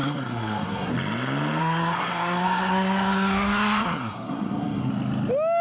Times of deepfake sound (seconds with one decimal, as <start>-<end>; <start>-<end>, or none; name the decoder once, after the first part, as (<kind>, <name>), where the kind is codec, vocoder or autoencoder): 0.0-0.9 (codec, SNAC); 1.6-4.9